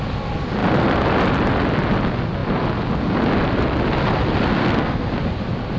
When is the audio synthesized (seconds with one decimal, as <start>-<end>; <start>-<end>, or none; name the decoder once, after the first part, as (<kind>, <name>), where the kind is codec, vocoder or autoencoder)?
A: 4.6-5.1 (codec, SNAC)